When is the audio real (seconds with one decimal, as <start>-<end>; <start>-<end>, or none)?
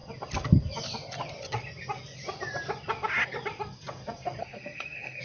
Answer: 0.0-4.4